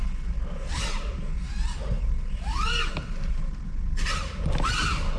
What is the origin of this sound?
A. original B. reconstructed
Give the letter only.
A